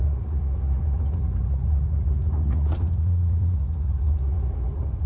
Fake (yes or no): yes